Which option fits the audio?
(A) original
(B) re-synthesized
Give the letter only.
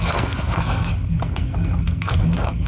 B